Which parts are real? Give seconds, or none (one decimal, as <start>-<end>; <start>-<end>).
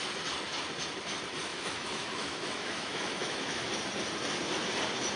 0.0-1.5; 3.7-5.2